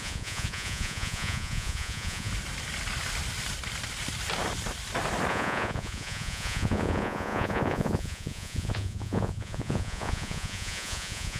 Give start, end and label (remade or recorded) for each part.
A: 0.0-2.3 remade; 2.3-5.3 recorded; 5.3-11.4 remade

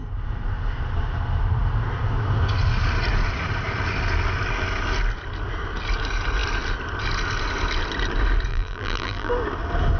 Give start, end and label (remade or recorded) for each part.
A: 0.0-8.5 recorded; 8.5-9.3 remade; 9.3-10.0 recorded

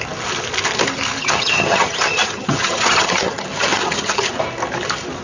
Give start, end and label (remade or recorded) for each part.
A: 0.0-1.2 recorded; 1.2-4.3 remade; 4.3-5.2 recorded

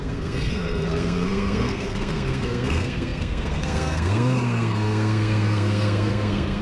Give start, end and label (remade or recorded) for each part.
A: 0.0-6.6 remade

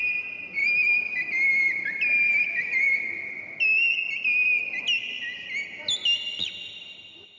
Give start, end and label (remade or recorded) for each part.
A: 0.0-0.6 recorded; 0.6-3.1 remade; 3.1-7.4 recorded

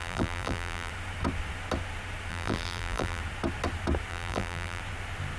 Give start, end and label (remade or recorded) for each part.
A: 0.0-0.9 remade; 0.9-2.3 recorded; 2.3-3.2 remade; 3.2-4.1 recorded; 4.1-4.8 remade; 4.8-5.4 recorded

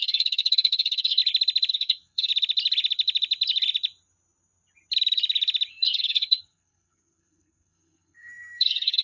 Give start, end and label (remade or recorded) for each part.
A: 0.0-1.2 remade; 1.2-1.7 recorded; 1.7-2.3 remade; 2.3-5.7 recorded; 5.7-9.0 remade

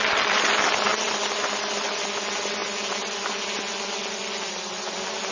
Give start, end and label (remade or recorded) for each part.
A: 0.0-5.3 recorded